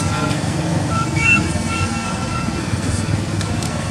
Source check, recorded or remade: remade